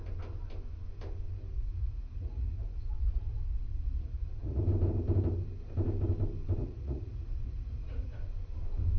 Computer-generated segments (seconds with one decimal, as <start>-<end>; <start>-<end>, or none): 1.5-4.6; 6.6-8.2